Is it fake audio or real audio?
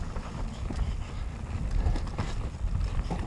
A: real